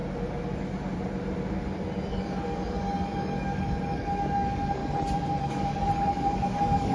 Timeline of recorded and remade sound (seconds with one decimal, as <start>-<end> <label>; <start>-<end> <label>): 0.0-2.1 recorded; 2.1-4.8 remade; 4.8-5.5 recorded; 5.5-6.9 remade